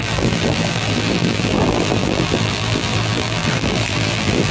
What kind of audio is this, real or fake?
fake